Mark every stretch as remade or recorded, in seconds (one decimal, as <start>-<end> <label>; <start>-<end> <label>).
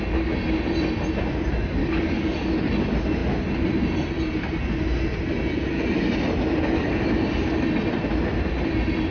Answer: 0.0-1.8 recorded; 1.8-2.7 remade; 2.7-9.1 recorded